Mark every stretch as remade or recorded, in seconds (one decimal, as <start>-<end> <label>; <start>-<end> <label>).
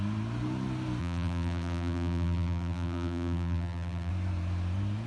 0.0-1.0 recorded; 1.0-4.1 remade; 4.1-5.1 recorded